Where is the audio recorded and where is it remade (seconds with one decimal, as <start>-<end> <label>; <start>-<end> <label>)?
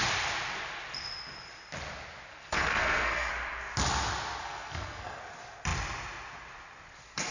0.0-2.3 recorded; 2.3-3.3 remade; 3.3-4.4 recorded; 4.4-5.2 remade; 5.2-7.3 recorded